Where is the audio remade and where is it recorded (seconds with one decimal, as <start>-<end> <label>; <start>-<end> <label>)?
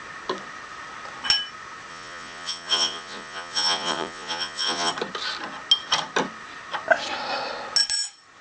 0.0-1.9 recorded; 1.9-4.9 remade; 4.9-8.4 recorded